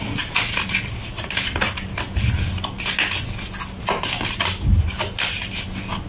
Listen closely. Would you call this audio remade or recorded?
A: recorded